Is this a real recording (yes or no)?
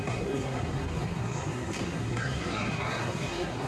no